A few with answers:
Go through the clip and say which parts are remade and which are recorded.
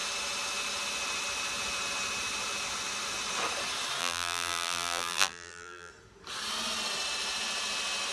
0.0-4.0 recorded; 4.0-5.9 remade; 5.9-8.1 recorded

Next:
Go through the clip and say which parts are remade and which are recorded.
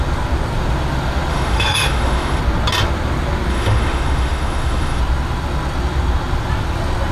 0.0-1.3 recorded; 1.3-2.4 remade; 2.4-3.5 recorded; 3.5-5.0 remade; 5.0-7.1 recorded